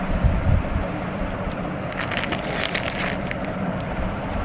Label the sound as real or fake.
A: real